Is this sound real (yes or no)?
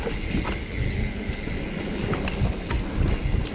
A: yes